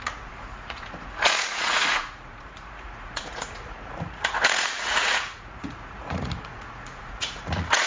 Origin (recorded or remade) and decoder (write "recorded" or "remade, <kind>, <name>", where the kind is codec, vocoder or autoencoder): remade, vocoder, Vocos